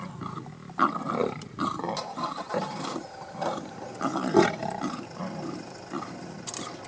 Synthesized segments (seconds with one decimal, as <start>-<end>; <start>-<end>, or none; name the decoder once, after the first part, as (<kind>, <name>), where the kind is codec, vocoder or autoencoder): 1.2-4.1 (vocoder, BigVGAN v2); 4.6-5.8